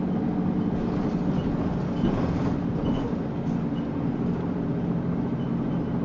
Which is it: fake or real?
real